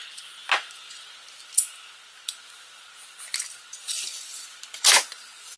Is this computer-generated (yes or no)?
no